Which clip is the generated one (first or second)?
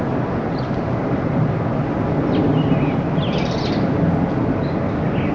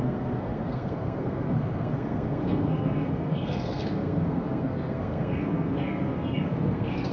second